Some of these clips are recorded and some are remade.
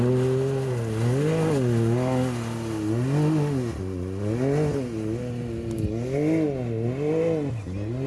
recorded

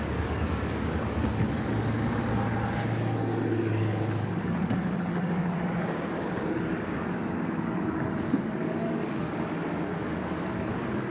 remade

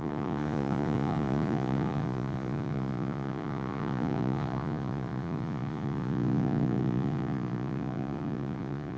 remade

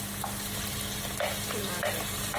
recorded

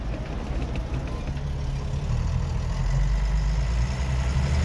recorded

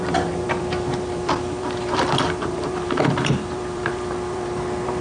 remade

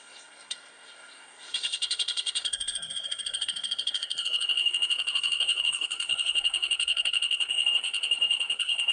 remade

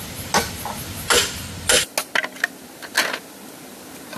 recorded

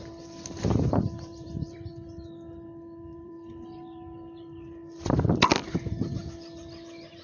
remade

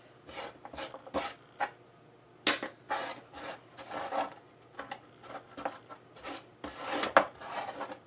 recorded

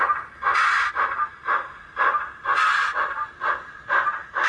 recorded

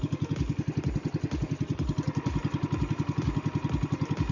recorded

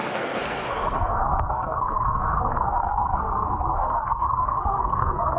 remade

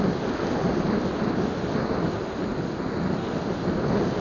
recorded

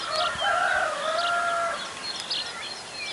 recorded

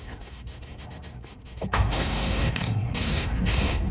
remade